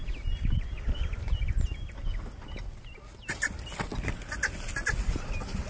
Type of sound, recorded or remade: recorded